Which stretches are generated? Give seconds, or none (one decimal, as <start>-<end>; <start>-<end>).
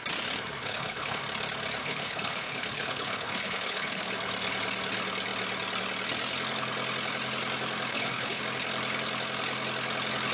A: 0.6-1.2; 1.8-4.1; 7.9-8.4